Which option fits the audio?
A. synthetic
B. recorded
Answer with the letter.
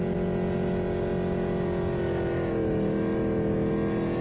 B